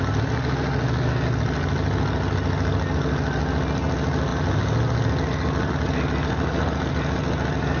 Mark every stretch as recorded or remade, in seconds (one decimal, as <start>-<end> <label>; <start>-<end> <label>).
0.0-7.8 recorded